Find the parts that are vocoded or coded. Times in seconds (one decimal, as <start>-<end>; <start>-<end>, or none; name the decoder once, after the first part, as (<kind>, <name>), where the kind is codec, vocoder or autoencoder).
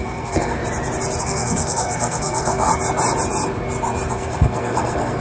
0.0-0.6 (codec, SNAC); 1.2-2.7; 4.1-5.2